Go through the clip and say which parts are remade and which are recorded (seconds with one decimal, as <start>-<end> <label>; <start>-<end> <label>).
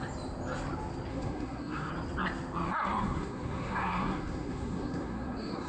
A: 0.0-1.1 recorded; 1.1-1.9 remade; 1.9-3.0 recorded; 3.0-5.7 remade